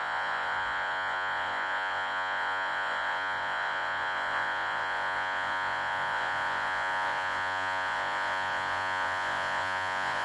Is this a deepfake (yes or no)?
yes